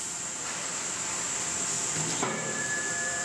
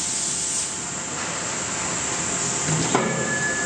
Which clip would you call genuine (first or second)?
second